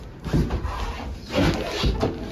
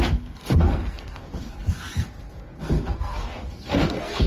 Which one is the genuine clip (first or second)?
first